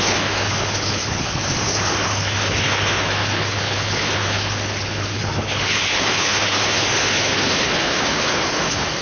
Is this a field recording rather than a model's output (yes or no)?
no